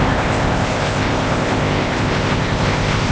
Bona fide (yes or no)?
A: no